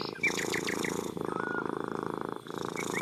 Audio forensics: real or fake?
real